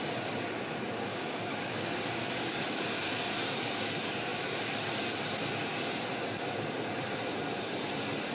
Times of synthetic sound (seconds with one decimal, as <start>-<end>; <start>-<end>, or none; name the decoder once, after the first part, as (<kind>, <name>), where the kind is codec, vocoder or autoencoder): 1.1-2.8 (codec, DAC)